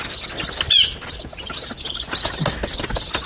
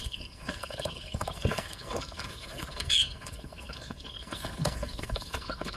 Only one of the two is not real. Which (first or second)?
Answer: second